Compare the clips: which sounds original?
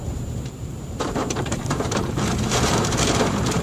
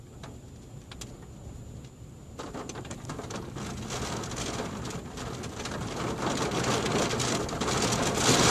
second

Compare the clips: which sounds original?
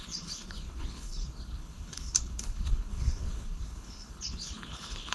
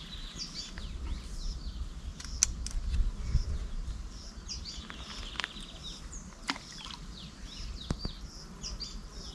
second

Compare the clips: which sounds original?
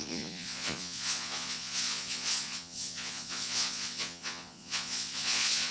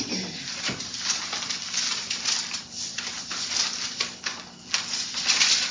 second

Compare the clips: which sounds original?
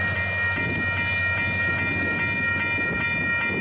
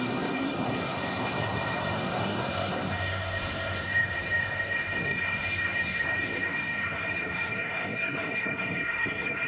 first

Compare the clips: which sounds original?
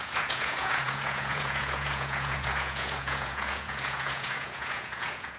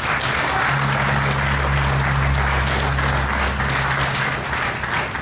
second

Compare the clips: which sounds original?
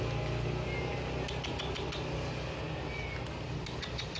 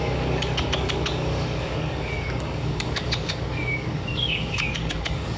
first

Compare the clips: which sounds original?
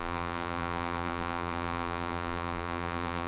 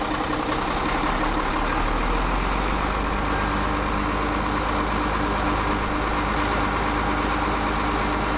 second